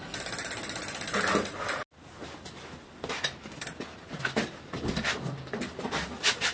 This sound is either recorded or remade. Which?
recorded